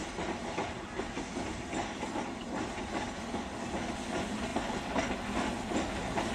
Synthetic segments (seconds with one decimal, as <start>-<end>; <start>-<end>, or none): none